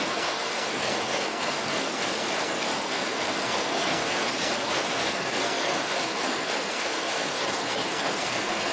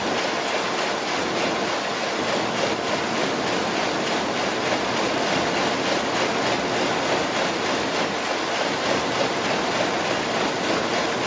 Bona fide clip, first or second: second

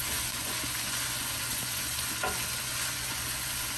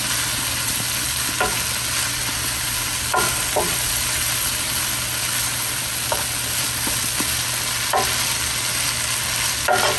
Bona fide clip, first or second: second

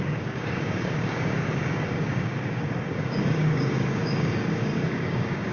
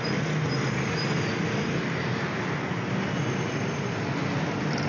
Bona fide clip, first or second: second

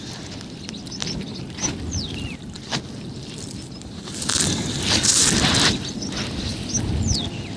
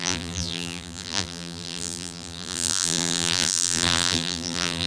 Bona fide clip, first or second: first